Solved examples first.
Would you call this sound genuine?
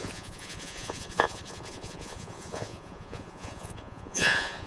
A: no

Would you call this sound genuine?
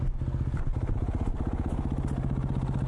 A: yes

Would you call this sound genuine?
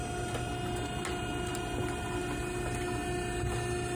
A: yes